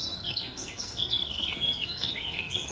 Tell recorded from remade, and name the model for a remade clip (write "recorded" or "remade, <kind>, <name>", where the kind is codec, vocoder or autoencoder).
remade, codec, SNAC